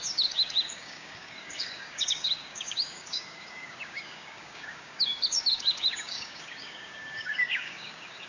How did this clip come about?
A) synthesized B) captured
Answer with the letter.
A